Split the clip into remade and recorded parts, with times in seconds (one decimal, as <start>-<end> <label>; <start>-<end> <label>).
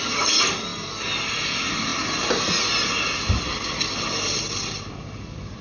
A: 0.0-0.7 remade; 0.7-1.3 recorded; 1.3-1.9 remade; 1.9-3.7 recorded; 3.7-5.6 remade